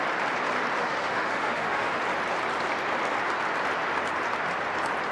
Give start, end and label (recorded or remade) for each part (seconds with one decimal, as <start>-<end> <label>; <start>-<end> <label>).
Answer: 0.0-0.8 recorded; 0.8-2.0 remade; 2.0-5.1 recorded